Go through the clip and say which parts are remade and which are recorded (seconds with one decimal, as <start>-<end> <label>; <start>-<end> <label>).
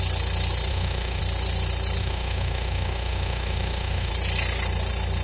0.0-0.7 recorded; 0.7-1.2 remade; 1.2-2.0 recorded; 2.0-4.1 remade; 4.1-5.2 recorded